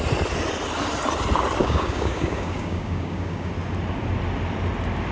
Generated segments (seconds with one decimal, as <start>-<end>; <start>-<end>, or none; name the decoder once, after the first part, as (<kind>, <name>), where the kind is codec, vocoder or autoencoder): 1.6-3.5 (codec, DAC)